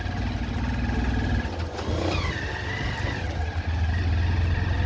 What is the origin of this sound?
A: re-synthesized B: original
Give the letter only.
B